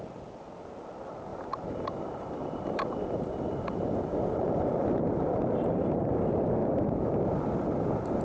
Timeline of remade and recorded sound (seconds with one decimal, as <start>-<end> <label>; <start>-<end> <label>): 0.0-1.3 recorded; 1.3-6.1 remade; 6.1-6.6 recorded; 6.6-8.2 remade